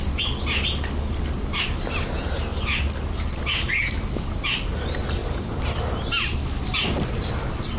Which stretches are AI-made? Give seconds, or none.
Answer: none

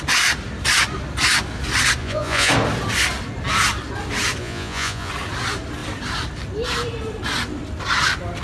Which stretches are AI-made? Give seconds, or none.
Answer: 2.0-2.5 (vocoder, Vocos); 4.4-5.1

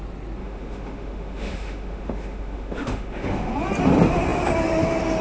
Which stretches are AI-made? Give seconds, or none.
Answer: 0.4-3.5 (autoencoder, DAC-VAE)

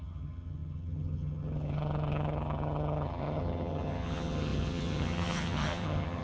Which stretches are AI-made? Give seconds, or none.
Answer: 0.0-6.2 (vocoder, HiFi-GAN)